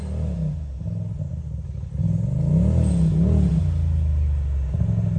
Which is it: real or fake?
real